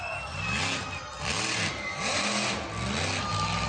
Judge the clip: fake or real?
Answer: real